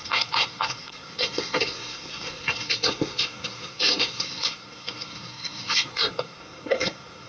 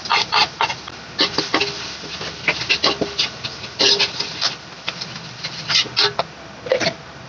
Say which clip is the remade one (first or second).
first